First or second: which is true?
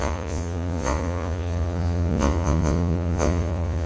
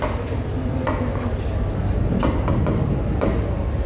second